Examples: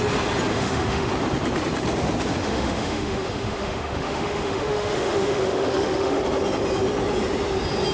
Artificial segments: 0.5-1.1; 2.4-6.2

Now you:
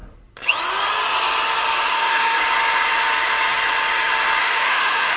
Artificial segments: 1.9-2.4; 4.4-5.2

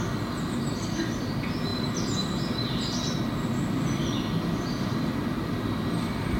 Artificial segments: none